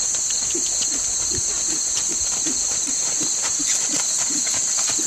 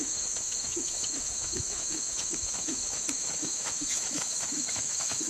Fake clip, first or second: second